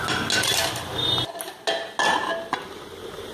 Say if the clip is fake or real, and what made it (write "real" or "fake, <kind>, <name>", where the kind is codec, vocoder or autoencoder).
real